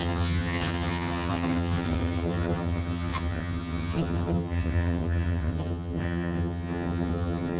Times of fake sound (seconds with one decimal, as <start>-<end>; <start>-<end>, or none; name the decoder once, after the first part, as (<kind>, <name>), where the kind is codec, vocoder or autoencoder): 0.0-7.6 (vocoder, HiFi-GAN)